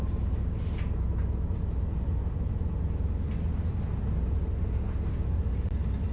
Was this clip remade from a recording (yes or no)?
no